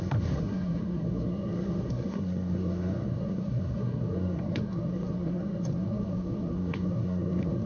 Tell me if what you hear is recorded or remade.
remade